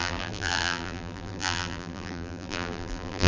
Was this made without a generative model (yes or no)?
no